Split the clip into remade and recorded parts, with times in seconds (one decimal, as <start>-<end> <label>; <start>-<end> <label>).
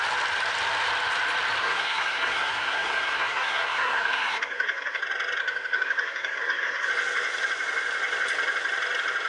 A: 0.0-1.6 recorded; 1.6-5.0 remade; 5.0-5.4 recorded; 5.4-6.9 remade; 6.9-9.3 recorded